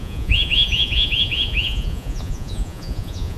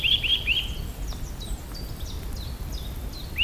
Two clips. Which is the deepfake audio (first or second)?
first